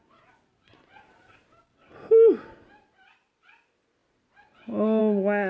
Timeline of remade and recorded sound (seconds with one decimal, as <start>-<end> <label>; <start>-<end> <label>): 0.0-5.5 recorded

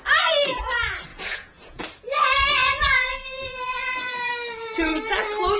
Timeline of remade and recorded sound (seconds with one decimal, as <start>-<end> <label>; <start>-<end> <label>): 0.0-1.1 recorded; 1.1-1.8 remade; 1.8-2.6 recorded; 2.6-4.3 remade; 4.3-5.6 recorded

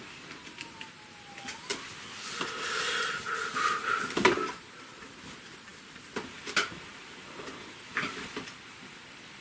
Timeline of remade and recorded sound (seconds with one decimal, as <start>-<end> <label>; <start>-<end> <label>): 0.0-9.4 recorded

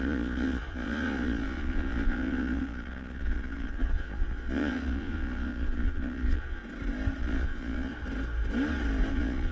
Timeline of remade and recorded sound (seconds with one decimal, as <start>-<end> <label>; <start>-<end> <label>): 0.0-6.6 remade; 6.6-7.2 recorded; 7.2-7.9 remade; 7.9-9.1 recorded; 9.1-9.5 remade

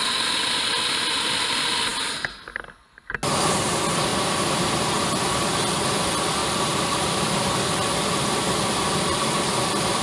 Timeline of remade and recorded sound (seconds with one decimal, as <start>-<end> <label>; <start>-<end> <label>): 0.0-6.4 recorded; 6.4-7.2 remade; 7.2-10.0 recorded